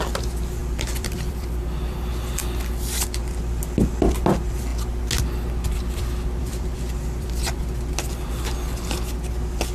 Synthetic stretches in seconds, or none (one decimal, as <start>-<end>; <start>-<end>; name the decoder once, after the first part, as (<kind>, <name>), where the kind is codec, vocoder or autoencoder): 0.6-2.0 (vocoder, BigVGAN v2); 6.4-7.6